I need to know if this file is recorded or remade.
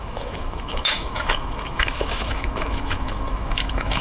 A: remade